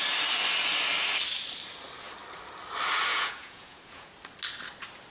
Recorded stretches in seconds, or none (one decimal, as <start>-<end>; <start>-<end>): 0.0-3.1; 4.1-5.1